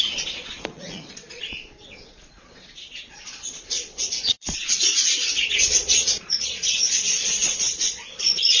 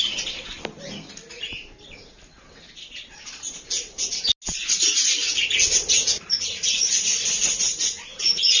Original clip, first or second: second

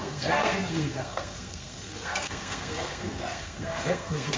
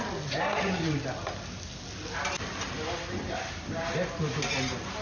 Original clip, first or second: second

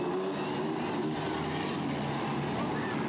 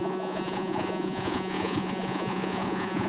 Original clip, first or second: first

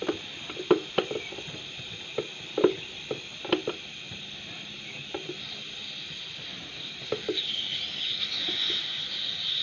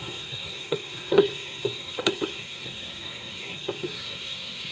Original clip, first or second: first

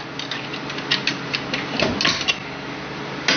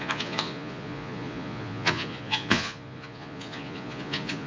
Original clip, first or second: first